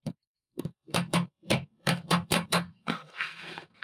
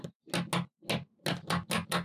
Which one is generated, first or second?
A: first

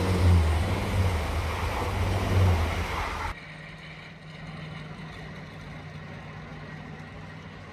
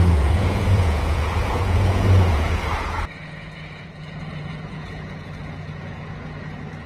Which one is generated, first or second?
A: second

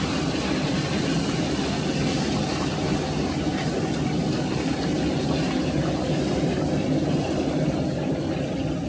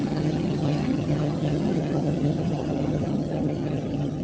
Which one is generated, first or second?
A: second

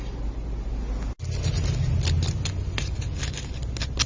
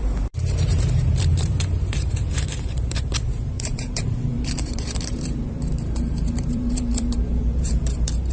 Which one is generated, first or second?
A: second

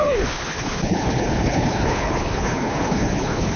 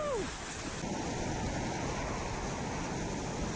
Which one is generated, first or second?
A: first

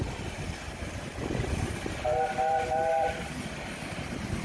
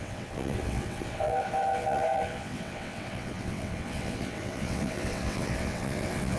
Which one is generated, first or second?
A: second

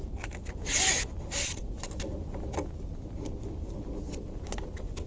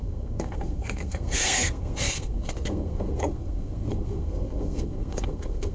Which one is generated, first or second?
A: second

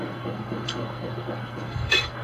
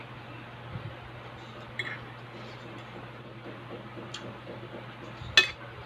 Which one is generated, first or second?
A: first